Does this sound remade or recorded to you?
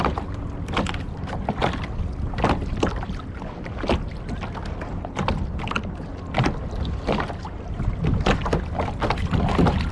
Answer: recorded